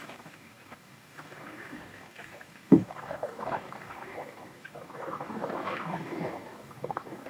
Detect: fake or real fake